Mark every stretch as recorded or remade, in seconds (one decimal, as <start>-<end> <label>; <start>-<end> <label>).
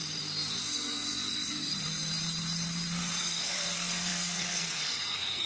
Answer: 0.0-0.6 recorded; 0.6-1.7 remade; 1.7-3.2 recorded; 3.2-5.5 remade